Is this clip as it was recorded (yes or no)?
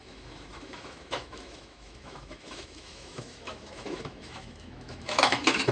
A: no